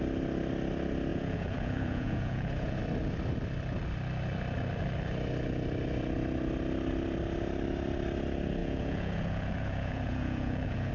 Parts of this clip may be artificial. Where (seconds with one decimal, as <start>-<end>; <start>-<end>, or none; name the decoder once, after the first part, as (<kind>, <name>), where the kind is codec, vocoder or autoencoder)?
1.1-2.8 (vocoder, Vocos); 8.6-10.9